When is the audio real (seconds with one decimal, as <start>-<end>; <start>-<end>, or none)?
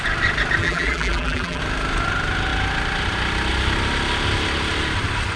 0.0-0.6; 1.6-5.4